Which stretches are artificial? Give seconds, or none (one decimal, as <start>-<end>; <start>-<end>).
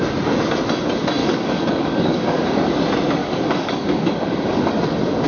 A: 1.2-2.7; 3.2-4.7